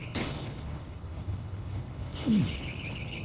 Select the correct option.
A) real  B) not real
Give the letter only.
B